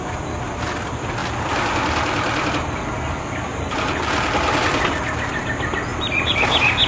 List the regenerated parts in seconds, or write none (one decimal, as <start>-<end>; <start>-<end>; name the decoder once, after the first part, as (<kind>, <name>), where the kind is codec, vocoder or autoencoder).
3.5-4.0 (vocoder, BigVGAN v2); 5.9-6.5

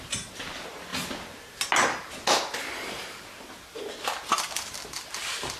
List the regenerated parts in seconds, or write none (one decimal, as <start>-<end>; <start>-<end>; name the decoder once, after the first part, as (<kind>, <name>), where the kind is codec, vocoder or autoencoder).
none

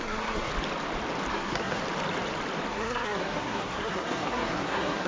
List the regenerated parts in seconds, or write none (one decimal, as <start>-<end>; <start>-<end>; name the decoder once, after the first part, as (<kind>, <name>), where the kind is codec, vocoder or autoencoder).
0.0-0.5 (codec, SNAC); 1.3-1.8; 2.7-5.1

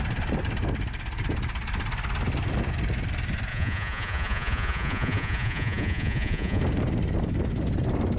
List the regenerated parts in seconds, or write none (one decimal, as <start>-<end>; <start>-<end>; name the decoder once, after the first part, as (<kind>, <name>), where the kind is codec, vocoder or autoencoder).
3.5-6.6 (vocoder, Vocos)

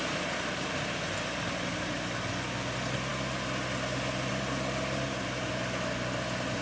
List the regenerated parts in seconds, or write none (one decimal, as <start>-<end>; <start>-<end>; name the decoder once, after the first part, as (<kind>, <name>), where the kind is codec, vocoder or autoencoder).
none